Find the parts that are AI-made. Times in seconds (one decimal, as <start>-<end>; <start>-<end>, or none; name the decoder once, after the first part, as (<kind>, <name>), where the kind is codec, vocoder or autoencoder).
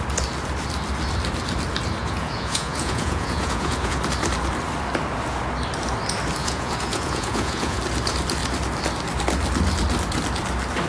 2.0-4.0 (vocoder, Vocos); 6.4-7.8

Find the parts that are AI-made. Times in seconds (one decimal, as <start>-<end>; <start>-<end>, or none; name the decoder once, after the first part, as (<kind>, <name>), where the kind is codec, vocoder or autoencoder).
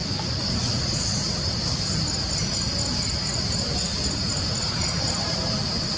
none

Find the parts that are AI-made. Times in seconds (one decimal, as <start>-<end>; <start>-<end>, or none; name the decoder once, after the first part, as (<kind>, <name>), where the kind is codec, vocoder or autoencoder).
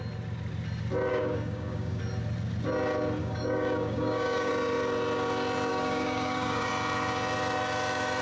1.1-2.0 (codec, DAC); 3.2-4.5; 5.7-6.7